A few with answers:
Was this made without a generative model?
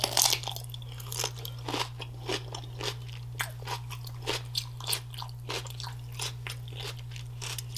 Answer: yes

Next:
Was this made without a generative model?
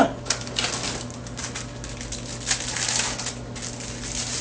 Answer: yes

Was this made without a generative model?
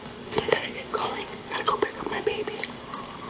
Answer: no